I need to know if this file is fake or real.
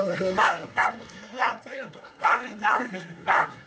fake